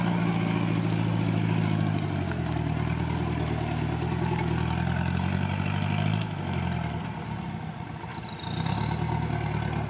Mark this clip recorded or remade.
recorded